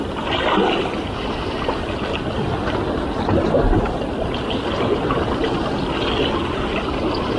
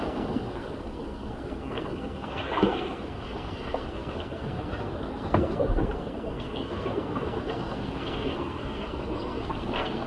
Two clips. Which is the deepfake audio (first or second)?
second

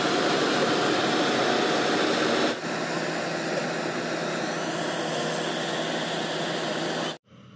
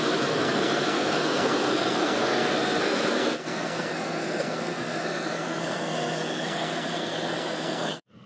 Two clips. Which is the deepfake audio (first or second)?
second